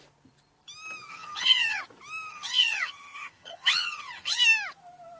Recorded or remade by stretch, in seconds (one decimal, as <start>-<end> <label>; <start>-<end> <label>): 0.0-1.1 recorded; 1.1-1.8 remade; 1.8-2.3 recorded; 2.3-4.4 remade; 4.4-5.2 recorded